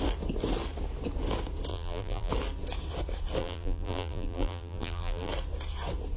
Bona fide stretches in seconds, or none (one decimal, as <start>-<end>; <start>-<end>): 0.0-1.7; 2.3-3.4; 5.3-6.2